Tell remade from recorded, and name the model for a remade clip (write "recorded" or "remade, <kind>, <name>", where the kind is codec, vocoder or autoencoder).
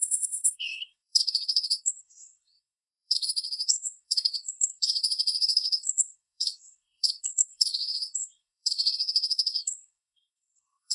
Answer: remade, codec, SNAC